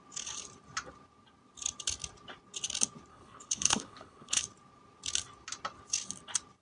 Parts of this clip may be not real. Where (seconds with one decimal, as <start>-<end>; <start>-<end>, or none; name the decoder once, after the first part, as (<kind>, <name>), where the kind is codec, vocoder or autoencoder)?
3.1-4.4 (codec, HILCodec)